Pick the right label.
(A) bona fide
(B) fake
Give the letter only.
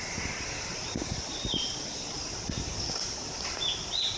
A